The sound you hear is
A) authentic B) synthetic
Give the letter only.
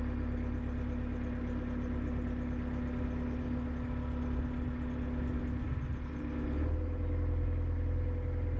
A